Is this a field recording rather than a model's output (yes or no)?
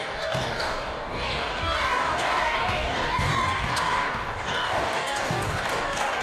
no